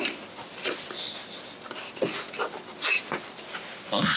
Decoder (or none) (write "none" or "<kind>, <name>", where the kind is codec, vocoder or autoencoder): none